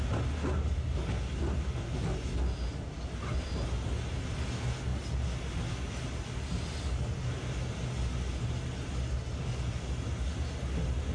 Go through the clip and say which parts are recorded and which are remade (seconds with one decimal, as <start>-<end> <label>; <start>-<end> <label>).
0.0-11.1 recorded